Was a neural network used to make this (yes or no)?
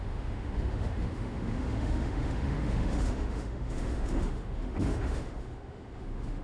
yes